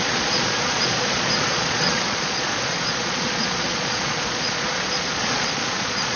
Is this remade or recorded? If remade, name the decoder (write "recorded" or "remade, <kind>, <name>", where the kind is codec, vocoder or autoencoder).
remade, vocoder, Vocos